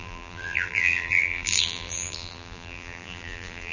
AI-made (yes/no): yes